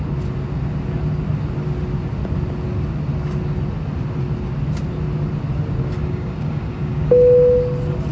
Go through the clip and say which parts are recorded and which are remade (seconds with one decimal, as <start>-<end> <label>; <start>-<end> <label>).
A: 0.0-6.0 recorded; 6.0-7.1 remade; 7.1-8.1 recorded